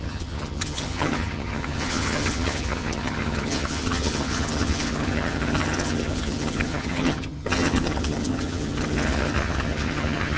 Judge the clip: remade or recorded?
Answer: remade